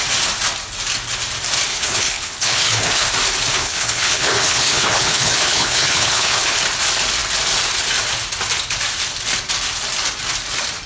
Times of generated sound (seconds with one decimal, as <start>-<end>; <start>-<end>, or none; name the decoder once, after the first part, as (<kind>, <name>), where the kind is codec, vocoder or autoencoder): 1.7-3.1 (codec, HILCodec); 3.5-6.6

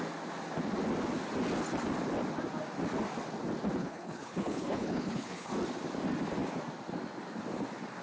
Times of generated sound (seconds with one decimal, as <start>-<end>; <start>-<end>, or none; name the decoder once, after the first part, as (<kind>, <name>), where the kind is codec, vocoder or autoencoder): 3.8-5.5 (codec, HILCodec)

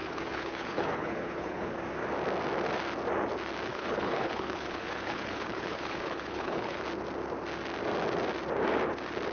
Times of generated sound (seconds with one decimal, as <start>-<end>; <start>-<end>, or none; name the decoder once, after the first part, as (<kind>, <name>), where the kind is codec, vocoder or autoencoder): 0.0-1.7 (codec, HILCodec); 3.7-6.8

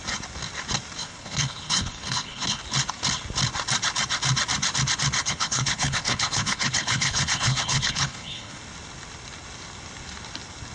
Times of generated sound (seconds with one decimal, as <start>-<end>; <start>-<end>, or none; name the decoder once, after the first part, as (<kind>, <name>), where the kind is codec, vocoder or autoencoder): 1.0-2.6 (codec, HILCodec); 5.2-8.6

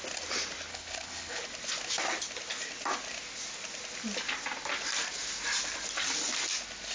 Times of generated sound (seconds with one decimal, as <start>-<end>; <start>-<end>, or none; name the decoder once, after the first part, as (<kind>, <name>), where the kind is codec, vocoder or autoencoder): 0.7-1.4 (codec, HILCodec)

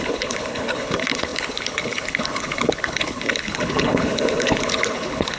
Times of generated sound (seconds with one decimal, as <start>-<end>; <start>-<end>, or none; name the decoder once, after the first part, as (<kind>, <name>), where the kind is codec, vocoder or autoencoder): 0.0-5.4 (codec, HILCodec)